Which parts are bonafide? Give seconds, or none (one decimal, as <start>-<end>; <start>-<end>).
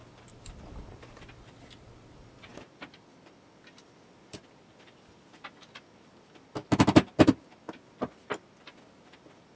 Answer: 6.6-7.7